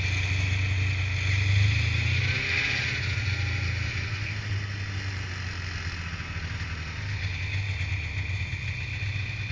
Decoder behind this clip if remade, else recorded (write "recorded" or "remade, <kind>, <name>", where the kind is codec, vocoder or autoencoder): recorded